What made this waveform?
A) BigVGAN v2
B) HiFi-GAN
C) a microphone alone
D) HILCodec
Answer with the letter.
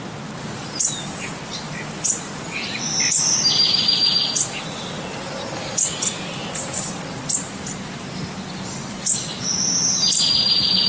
C